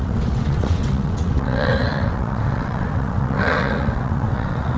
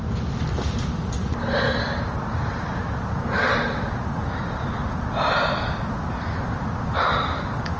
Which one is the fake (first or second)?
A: first